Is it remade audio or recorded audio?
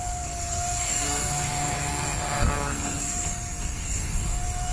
remade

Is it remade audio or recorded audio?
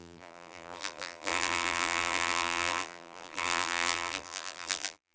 remade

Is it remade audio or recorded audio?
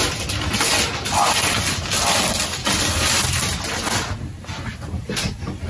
recorded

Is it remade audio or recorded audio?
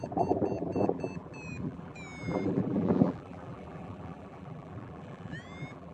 remade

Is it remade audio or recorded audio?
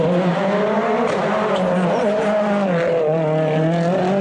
recorded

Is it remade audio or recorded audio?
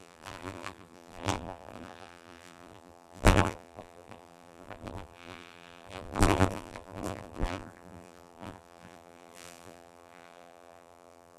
remade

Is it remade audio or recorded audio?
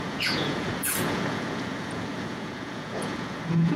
remade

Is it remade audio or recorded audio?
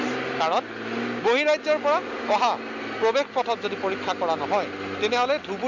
recorded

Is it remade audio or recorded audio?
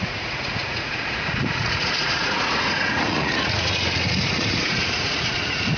remade